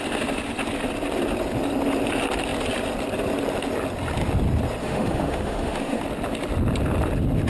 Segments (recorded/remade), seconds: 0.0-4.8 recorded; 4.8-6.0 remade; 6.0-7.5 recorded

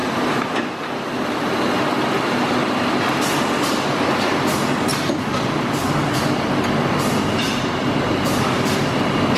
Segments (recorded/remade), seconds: 0.0-9.4 recorded

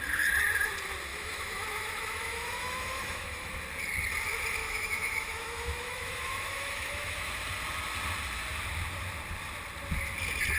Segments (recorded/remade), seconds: 0.0-1.1 recorded; 1.1-3.6 remade; 3.6-4.6 recorded; 4.6-7.3 remade; 7.3-10.6 recorded

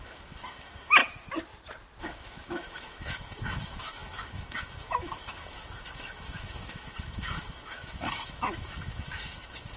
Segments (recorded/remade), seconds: 0.0-1.0 remade; 1.0-2.0 recorded; 2.0-9.8 remade

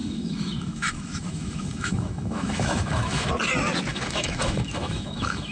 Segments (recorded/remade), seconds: 0.0-3.3 remade; 3.3-3.9 recorded; 3.9-5.5 remade

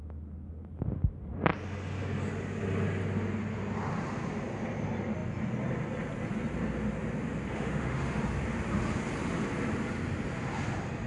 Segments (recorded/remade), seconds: 0.0-7.5 recorded; 7.5-8.2 remade; 8.2-11.1 recorded

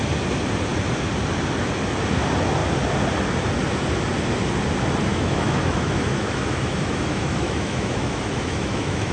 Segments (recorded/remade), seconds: 0.0-5.1 recorded; 5.1-9.1 remade

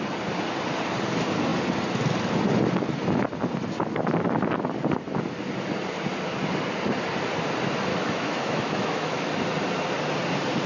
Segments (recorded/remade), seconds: 0.0-7.9 recorded; 7.9-9.3 remade; 9.3-10.7 recorded